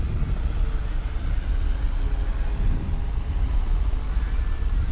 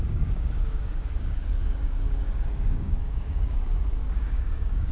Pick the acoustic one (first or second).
first